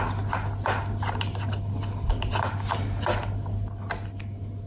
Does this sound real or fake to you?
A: real